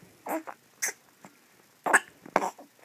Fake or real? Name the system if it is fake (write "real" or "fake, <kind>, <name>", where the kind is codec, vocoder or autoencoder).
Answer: real